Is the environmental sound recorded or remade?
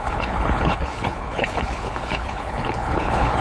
remade